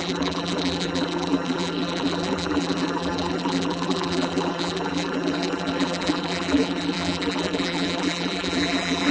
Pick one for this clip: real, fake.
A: fake